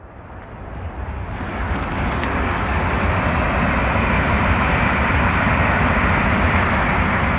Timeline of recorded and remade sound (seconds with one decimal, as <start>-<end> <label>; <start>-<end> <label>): 0.0-1.5 recorded; 1.5-2.8 remade; 2.8-7.4 recorded